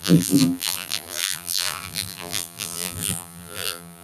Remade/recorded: remade